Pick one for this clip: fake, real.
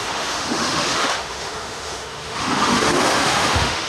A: fake